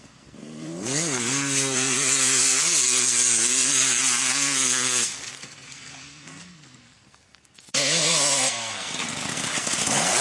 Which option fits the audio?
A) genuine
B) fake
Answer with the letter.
B